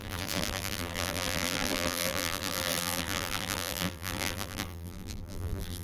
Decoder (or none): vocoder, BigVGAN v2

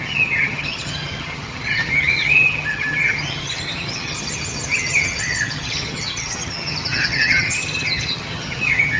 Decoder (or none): vocoder, HiFi-GAN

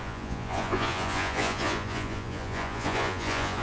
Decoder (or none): vocoder, Vocos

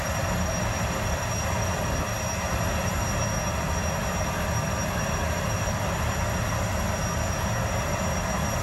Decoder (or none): none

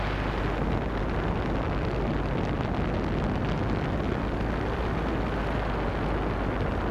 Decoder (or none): none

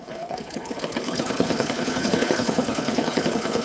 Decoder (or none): codec, HILCodec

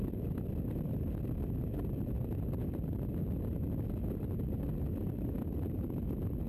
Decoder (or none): none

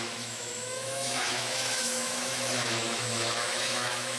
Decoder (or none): autoencoder, DAC-VAE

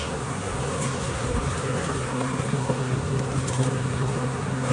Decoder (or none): codec, SNAC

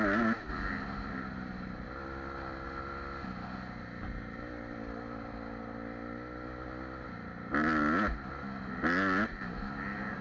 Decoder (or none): none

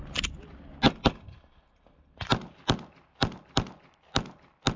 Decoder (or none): none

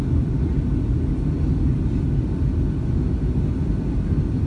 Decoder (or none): none